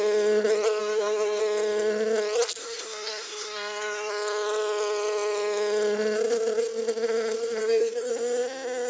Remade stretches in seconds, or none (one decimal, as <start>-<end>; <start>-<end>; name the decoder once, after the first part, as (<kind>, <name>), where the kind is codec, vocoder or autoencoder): 0.8-1.4 (codec, SNAC); 2.6-4.1; 7.6-8.1